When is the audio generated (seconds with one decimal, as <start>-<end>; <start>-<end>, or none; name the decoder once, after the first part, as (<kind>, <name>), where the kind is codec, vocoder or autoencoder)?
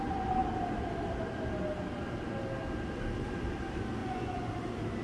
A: 4.0-4.5 (vocoder, Vocos)